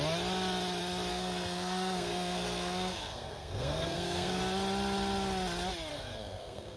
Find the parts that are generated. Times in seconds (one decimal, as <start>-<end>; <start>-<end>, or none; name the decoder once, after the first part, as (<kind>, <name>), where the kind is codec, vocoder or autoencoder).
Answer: 1.1-4.4 (codec, SNAC); 5.9-6.8